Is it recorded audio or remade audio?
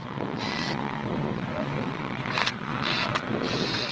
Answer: remade